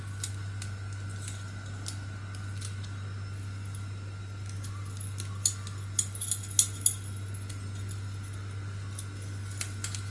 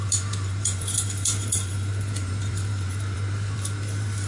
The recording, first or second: first